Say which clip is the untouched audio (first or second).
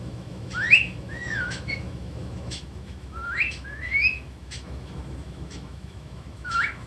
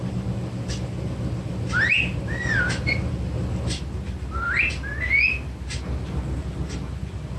second